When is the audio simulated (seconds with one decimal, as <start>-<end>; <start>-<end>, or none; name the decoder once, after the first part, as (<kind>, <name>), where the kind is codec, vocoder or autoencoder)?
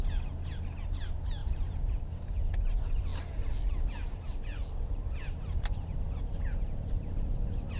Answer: 1.4-2.0 (vocoder, BigVGAN v2)